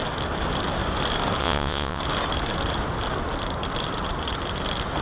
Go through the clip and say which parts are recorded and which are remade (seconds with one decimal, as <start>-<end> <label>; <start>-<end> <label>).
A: 0.0-1.4 recorded; 1.4-2.0 remade; 2.0-5.0 recorded